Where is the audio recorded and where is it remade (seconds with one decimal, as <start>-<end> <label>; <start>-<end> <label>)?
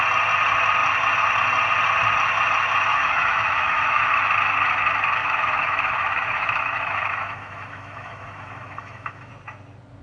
0.0-2.9 recorded; 2.9-4.2 remade; 4.2-5.2 recorded; 5.2-9.3 remade; 9.3-10.0 recorded